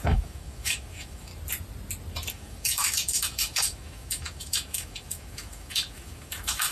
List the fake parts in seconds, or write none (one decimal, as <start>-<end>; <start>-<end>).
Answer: 0.0-1.3; 2.3-6.7